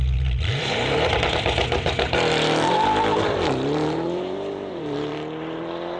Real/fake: fake